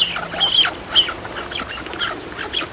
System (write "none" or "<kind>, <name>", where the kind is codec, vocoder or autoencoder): none